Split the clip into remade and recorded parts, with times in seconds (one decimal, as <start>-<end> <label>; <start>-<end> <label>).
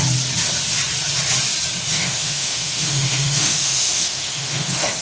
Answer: 0.0-1.9 recorded; 1.9-5.0 remade